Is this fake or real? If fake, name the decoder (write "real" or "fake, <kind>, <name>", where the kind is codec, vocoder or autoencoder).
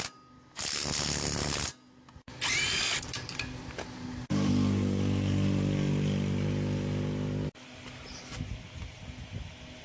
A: real